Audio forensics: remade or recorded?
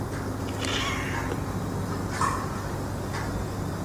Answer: recorded